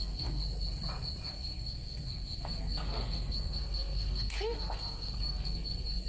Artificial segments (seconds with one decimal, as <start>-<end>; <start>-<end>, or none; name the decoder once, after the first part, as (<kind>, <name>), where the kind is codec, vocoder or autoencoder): 0.0-0.4 (codec, SNAC); 1.3-6.1

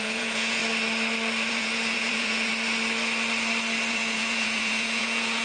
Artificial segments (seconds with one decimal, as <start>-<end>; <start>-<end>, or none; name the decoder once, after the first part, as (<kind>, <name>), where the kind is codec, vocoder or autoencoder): 0.0-0.6 (vocoder, Vocos); 1.5-2.5; 3.9-5.4

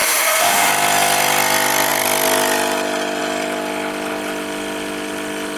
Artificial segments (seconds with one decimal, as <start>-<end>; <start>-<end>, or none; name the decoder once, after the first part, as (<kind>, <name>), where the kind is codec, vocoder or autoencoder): 0.0-0.7 (autoencoder, DAC-VAE)

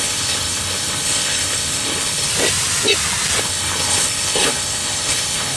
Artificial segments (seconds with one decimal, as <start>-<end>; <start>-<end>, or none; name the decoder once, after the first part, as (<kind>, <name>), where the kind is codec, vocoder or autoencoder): 0.0-2.3 (codec, HILCodec); 3.4-5.6

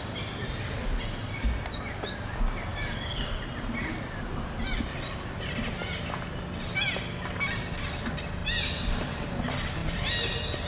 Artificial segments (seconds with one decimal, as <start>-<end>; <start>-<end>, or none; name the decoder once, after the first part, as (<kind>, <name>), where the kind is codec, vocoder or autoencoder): 2.7-3.4 (codec, DAC)